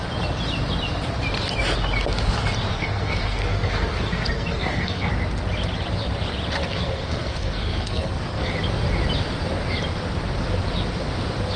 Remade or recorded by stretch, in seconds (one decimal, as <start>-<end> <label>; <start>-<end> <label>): 0.0-2.7 recorded; 2.7-5.1 remade; 5.1-6.6 recorded; 6.6-8.5 remade; 8.5-11.6 recorded